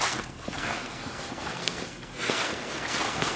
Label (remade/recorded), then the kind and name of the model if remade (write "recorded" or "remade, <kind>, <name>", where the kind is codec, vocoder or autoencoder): remade, codec, SNAC